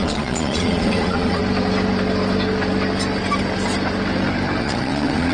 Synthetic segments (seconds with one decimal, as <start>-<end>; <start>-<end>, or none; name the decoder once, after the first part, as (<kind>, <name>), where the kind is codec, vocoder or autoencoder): 0.0-1.4 (vocoder, Vocos); 4.6-5.3